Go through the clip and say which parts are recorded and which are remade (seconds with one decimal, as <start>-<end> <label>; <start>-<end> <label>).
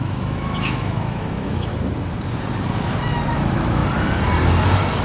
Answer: 0.0-1.7 remade; 1.7-3.3 recorded; 3.3-3.8 remade; 3.8-5.0 recorded